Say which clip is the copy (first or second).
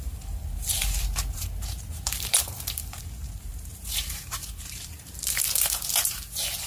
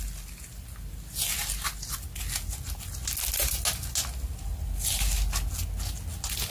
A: first